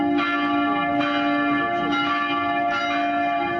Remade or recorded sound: recorded